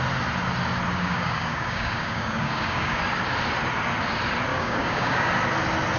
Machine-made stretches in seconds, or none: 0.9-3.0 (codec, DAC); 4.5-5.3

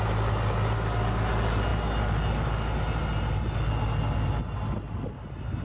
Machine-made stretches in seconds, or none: none